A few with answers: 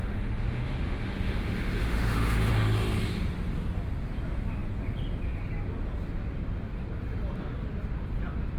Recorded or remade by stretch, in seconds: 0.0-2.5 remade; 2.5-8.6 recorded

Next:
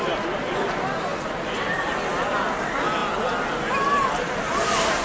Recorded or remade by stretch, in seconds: 0.0-5.0 recorded

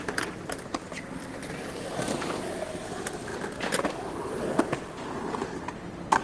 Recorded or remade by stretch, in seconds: 0.0-6.2 recorded

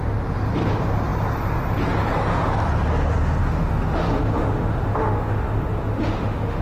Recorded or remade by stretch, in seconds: 0.0-3.4 recorded; 3.4-6.6 remade